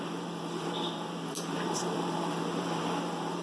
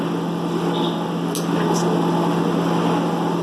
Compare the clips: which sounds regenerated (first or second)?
first